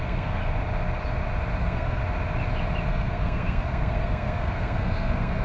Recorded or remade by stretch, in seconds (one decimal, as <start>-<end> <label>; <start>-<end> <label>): 0.0-0.4 remade; 0.4-1.6 recorded; 1.6-2.0 remade; 2.0-2.9 recorded; 2.9-5.4 remade